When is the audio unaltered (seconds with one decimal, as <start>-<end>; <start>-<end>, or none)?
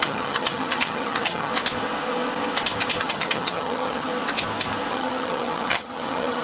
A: 1.5-3.0; 4.1-4.9